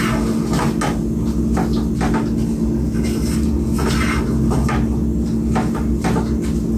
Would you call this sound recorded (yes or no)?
yes